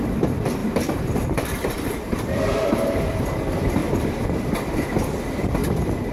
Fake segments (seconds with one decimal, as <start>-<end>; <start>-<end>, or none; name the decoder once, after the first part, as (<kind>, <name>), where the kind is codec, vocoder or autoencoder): 0.6-3.2 (vocoder, BigVGAN v2); 3.8-4.9; 5.6-6.1